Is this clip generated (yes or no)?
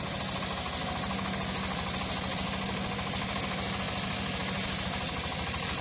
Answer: no